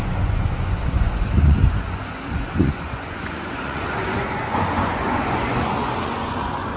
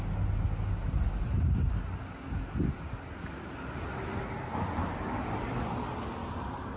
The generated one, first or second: first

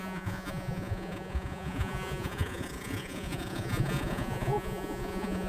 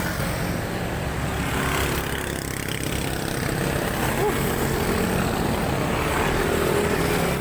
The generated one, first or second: first